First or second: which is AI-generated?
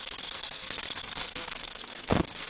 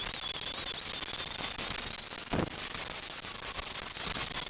first